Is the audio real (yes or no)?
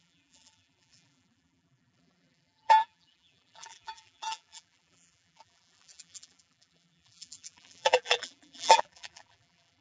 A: no